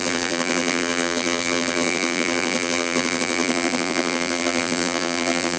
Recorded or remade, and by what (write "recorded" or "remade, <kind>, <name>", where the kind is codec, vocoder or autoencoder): remade, vocoder, BigVGAN v2